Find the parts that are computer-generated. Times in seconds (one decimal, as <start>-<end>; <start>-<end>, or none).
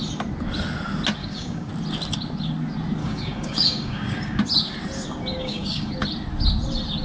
1.2-1.7; 3.0-4.4; 5.3-5.9